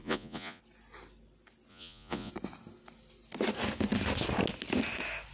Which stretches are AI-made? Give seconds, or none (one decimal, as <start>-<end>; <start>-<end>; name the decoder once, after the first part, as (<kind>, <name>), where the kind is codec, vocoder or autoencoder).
0.0-0.6 (vocoder, Vocos); 1.7-2.3